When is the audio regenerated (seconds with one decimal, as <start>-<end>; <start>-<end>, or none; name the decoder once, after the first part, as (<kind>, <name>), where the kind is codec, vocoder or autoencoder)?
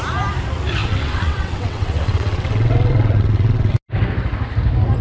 0.8-3.8 (vocoder, WaveNeXt)